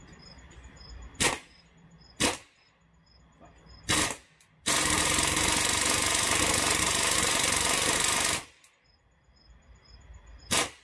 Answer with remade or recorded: recorded